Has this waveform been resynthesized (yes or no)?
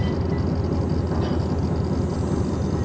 no